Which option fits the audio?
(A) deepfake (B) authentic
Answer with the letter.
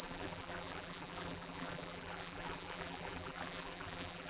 A